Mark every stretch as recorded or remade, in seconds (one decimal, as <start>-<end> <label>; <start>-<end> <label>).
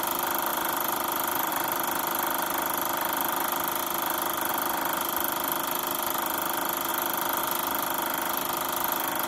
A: 0.0-0.5 recorded; 0.5-1.5 remade; 1.5-9.3 recorded